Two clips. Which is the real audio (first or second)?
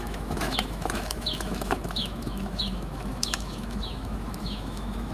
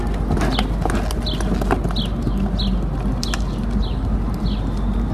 second